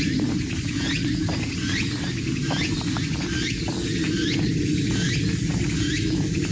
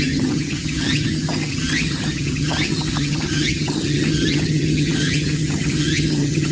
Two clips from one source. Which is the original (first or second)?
first